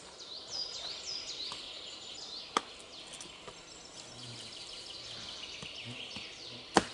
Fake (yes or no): no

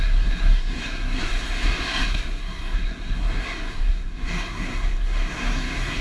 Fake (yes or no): yes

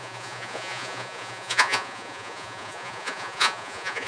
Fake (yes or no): yes